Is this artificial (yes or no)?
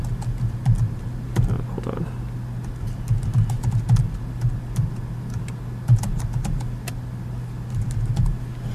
no